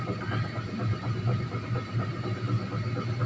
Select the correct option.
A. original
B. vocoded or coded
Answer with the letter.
A